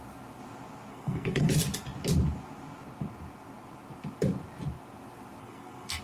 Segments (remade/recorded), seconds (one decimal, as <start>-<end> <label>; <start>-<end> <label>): 0.0-0.9 recorded; 0.9-1.5 remade; 1.5-5.4 recorded; 5.4-6.0 remade